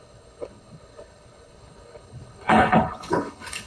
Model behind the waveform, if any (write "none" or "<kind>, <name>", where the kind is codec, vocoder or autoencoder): codec, HILCodec